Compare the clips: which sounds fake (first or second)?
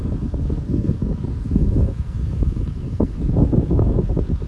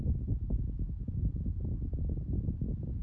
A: first